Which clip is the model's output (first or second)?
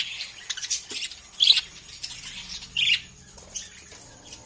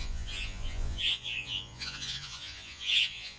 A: second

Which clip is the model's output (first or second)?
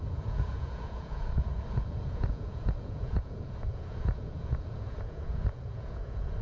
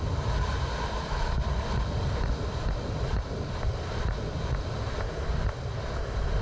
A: first